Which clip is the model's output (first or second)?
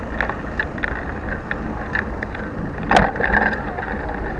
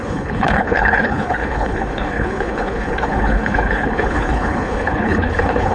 second